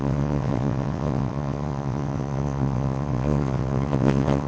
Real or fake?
fake